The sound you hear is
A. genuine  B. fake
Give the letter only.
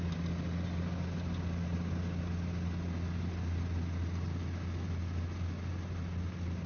A